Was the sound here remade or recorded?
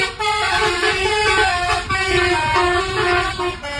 recorded